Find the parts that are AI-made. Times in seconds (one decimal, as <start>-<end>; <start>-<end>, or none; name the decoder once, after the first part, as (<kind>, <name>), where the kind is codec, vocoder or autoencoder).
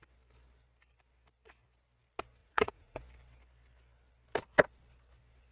2.4-3.0 (vocoder, Vocos)